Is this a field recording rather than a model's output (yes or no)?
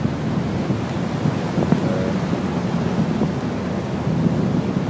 yes